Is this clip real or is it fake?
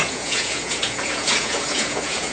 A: fake